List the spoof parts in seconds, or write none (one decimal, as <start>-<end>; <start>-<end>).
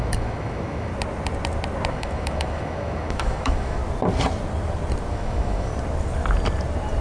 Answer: 0.0-0.9; 1.9-3.8; 5.1-5.7